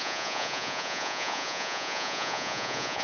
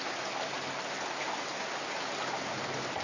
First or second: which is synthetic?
first